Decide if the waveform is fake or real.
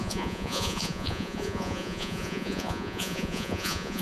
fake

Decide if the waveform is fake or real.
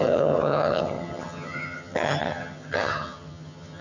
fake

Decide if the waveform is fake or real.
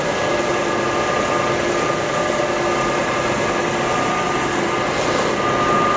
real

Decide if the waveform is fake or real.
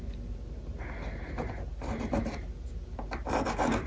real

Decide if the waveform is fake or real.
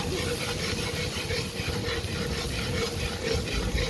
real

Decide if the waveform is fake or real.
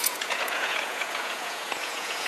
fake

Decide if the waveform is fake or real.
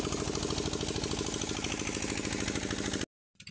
real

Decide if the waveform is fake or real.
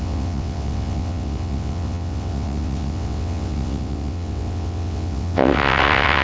fake